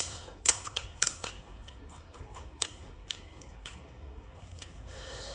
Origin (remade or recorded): remade